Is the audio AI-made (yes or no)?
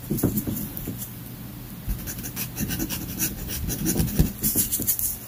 no